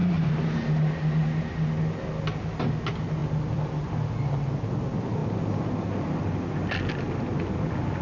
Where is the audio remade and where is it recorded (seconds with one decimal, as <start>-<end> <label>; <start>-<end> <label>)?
0.0-8.0 recorded